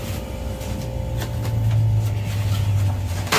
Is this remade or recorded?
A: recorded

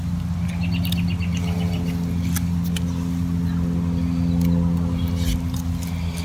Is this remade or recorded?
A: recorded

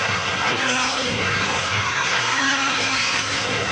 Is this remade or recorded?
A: remade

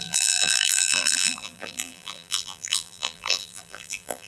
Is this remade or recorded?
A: remade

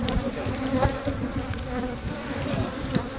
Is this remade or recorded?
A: remade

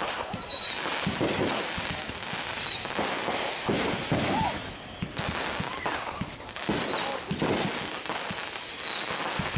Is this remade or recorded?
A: recorded